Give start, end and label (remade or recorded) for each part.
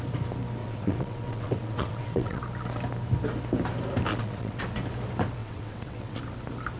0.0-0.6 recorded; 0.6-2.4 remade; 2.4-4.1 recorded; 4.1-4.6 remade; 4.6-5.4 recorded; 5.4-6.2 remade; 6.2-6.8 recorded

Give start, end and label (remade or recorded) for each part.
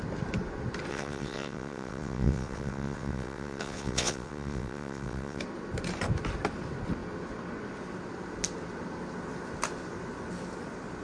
0.0-0.9 recorded; 0.9-5.4 remade; 5.4-11.0 recorded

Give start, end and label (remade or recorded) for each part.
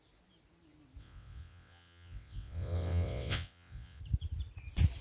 0.0-1.0 recorded; 1.0-4.0 remade; 4.0-5.0 recorded